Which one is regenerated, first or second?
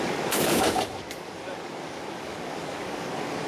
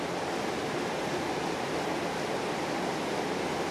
first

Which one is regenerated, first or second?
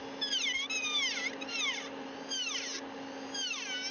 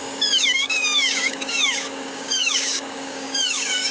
second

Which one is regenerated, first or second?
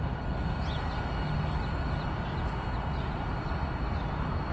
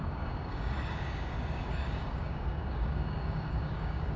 second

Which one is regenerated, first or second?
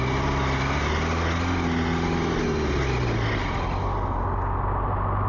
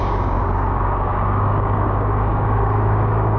second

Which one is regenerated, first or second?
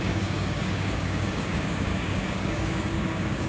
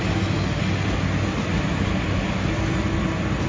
first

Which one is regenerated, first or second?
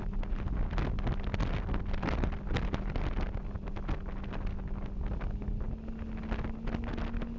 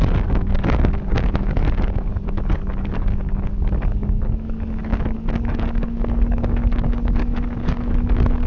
second